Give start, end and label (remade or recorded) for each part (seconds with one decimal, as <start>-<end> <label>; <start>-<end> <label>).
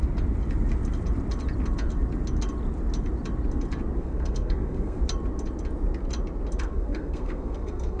0.0-4.0 recorded; 4.0-5.0 remade; 5.0-6.6 recorded; 6.6-8.0 remade